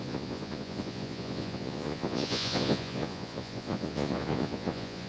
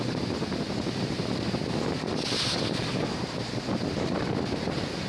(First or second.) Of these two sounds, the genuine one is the second